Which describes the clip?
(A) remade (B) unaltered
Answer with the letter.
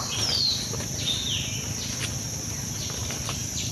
B